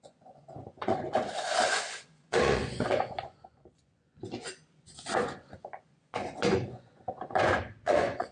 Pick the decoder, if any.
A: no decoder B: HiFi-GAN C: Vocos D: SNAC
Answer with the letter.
C